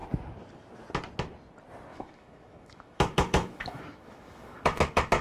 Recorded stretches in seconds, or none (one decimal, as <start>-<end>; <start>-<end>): 0.0-1.9